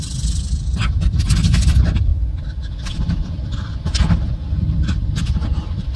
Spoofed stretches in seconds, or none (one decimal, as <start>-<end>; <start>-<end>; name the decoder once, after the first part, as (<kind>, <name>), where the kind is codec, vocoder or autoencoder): none